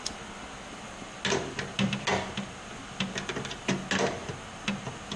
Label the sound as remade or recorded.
recorded